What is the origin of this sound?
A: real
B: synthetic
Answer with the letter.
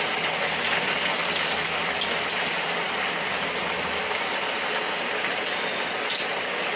A